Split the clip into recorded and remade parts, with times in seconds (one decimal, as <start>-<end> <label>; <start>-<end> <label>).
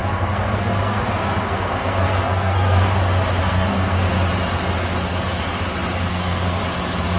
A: 0.0-2.9 remade; 2.9-3.4 recorded; 3.4-4.1 remade; 4.1-6.1 recorded; 6.1-6.6 remade; 6.6-7.2 recorded